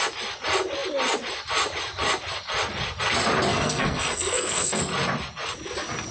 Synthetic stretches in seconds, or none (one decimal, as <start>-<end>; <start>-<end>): 3.5-4.8